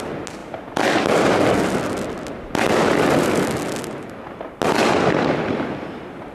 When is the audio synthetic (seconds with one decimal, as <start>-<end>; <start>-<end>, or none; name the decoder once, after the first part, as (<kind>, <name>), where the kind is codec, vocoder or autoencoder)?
none